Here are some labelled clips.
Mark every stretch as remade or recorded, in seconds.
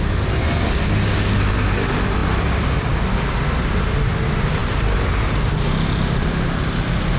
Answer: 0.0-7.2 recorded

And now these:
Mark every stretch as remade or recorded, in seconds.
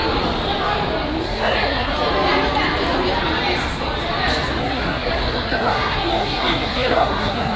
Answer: 0.0-1.2 recorded; 1.2-1.9 remade; 1.9-4.6 recorded; 4.6-7.6 remade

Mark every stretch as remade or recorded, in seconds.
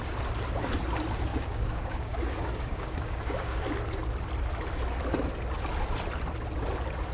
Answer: 0.0-1.3 recorded; 1.3-3.6 remade; 3.6-7.1 recorded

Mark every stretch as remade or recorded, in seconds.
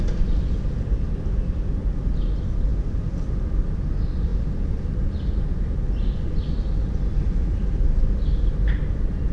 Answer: 0.0-9.3 recorded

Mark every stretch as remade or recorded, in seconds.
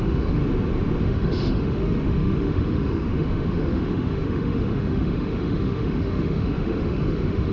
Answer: 0.0-0.4 remade; 0.4-1.0 recorded; 1.0-7.5 remade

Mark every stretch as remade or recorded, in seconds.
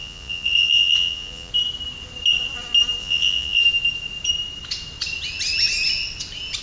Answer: 0.0-1.5 remade; 1.5-3.0 recorded; 3.0-3.6 remade; 3.6-6.6 recorded